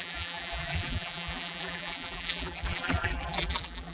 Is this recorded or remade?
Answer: remade